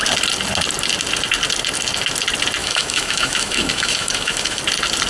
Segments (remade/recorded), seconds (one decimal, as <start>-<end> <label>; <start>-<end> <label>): 0.0-2.6 recorded; 2.6-4.6 remade; 4.6-5.1 recorded